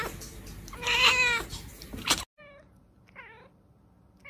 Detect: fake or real real